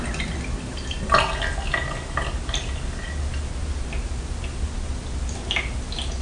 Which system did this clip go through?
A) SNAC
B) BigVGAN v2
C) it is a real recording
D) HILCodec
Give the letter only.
C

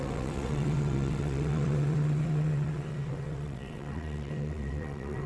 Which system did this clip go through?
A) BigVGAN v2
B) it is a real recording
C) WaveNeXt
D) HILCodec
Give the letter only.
C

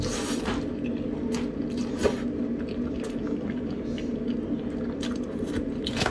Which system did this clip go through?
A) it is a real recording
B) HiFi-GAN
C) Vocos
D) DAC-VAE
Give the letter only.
A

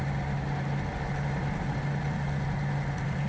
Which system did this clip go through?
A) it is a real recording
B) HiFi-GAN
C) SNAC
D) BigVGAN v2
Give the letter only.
A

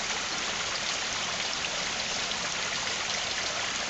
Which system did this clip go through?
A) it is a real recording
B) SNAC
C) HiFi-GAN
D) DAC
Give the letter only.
A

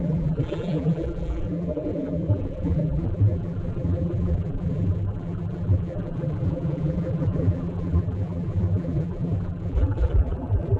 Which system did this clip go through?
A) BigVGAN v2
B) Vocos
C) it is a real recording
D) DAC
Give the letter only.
A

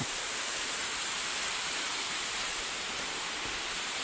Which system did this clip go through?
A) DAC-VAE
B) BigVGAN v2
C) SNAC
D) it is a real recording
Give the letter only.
B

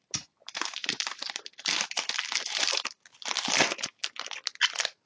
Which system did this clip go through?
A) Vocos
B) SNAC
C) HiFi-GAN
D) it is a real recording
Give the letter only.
D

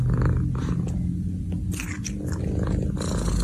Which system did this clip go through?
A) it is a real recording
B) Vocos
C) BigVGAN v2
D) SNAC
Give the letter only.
A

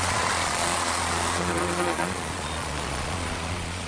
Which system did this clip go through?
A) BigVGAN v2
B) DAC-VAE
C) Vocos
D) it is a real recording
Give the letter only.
C